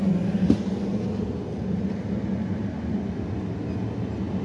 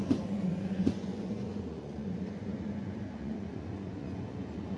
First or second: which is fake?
second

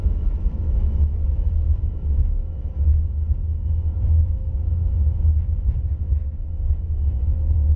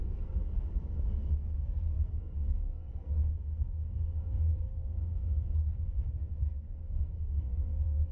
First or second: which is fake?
second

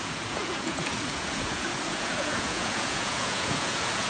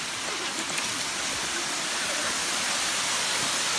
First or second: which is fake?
first